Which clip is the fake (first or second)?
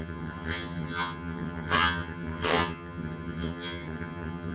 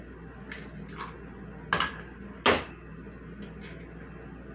first